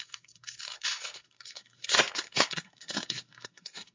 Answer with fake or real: fake